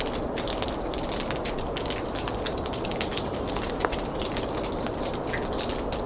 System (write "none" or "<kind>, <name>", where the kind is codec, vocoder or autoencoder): none